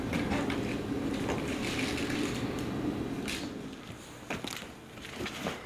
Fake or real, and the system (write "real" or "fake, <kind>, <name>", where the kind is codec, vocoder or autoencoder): real